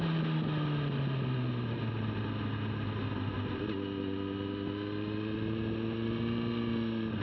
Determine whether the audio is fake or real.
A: real